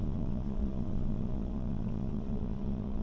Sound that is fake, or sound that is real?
fake